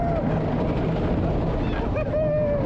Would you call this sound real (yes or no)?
yes